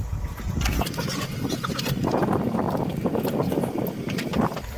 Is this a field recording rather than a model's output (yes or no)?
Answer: yes